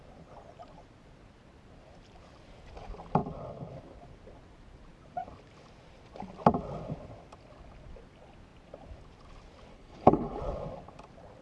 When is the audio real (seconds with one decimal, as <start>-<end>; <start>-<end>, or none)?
0.0-9.7; 10.4-11.4